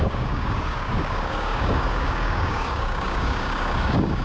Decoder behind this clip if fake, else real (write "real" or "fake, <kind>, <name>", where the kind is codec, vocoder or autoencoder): fake, codec, DAC